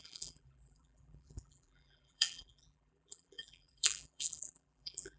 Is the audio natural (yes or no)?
no